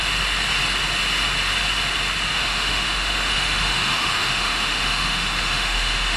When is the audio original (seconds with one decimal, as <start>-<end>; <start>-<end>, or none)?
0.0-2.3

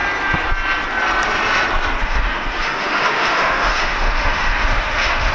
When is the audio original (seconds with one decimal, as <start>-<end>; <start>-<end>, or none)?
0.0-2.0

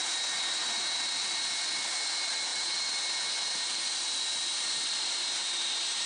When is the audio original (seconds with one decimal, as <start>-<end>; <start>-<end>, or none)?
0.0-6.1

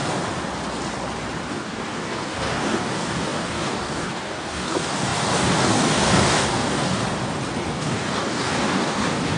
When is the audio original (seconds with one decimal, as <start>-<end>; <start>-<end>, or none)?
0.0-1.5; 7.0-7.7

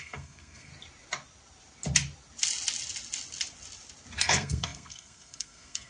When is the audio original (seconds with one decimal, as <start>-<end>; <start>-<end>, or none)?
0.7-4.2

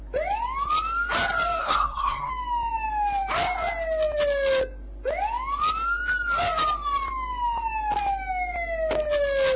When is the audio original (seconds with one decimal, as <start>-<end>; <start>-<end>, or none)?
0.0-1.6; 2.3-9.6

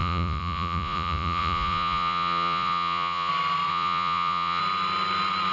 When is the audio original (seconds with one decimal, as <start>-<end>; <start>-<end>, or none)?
3.3-3.7; 4.6-5.5